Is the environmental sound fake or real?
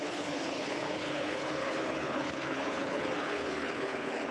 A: fake